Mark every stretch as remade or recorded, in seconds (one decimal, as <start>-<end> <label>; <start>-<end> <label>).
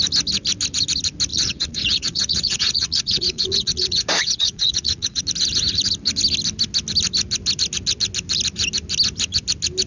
0.0-1.3 recorded; 1.3-5.2 remade; 5.2-9.9 recorded